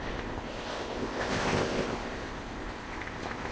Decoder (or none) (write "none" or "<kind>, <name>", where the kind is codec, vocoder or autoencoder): codec, ZipCodec